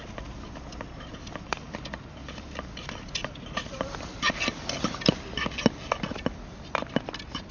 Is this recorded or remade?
recorded